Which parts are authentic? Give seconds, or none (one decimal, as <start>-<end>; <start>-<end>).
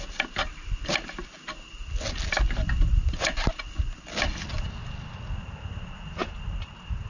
0.0-7.1